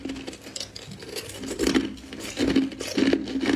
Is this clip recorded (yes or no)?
yes